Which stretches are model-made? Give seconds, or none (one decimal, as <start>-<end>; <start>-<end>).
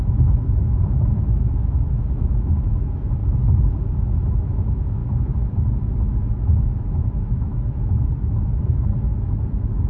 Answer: 0.0-3.2; 4.3-5.0; 6.0-9.9